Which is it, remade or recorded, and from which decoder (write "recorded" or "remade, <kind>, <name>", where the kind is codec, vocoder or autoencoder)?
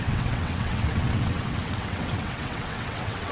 remade, vocoder, WaveNeXt